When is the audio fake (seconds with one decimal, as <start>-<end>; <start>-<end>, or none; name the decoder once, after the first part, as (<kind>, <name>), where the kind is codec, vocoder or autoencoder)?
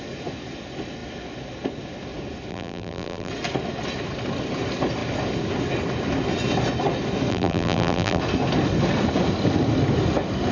2.5-3.3 (vocoder, BigVGAN v2); 7.3-8.2